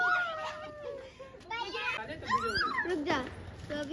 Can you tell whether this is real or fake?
real